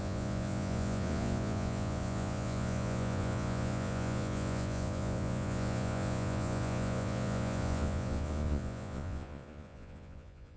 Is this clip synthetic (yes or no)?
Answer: yes